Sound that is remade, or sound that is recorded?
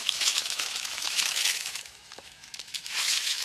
remade